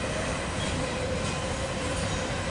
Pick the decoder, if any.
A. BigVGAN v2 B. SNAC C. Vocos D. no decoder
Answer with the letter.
D